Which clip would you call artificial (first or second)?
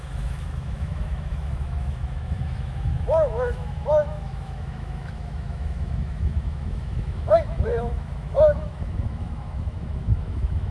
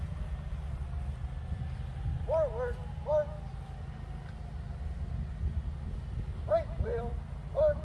first